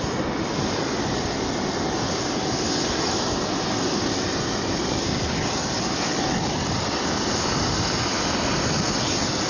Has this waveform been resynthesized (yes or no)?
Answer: no